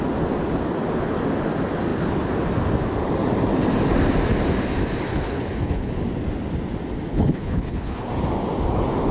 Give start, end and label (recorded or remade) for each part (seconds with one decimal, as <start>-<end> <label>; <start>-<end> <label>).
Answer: 0.0-5.1 recorded; 5.1-5.9 remade; 5.9-7.1 recorded; 7.1-8.1 remade; 8.1-9.1 recorded